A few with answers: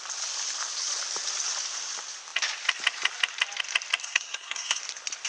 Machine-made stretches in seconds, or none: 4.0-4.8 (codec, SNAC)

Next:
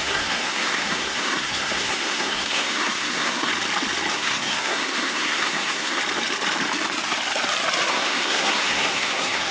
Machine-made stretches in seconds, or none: 0.0-3.5 (codec, SNAC); 4.1-6.0; 7.9-9.5